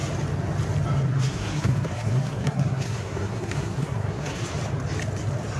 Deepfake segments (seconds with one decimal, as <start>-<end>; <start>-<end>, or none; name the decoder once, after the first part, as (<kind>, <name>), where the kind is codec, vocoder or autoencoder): 1.1-4.5 (codec, SNAC)